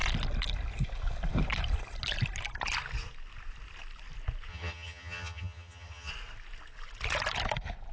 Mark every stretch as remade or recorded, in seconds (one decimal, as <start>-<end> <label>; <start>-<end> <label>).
0.0-4.5 recorded; 4.5-6.1 remade; 6.1-7.9 recorded